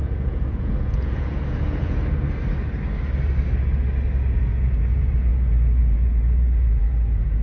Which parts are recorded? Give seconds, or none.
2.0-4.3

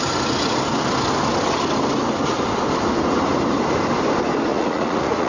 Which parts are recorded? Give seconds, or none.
0.0-4.5

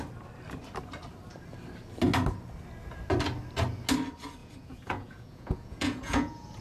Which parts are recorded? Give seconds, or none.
0.0-4.4